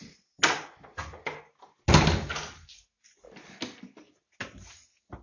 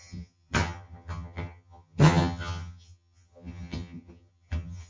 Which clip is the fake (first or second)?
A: second